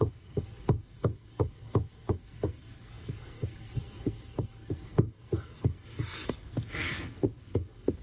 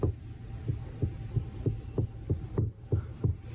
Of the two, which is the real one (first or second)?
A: second